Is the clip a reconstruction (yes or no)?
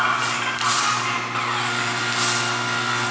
no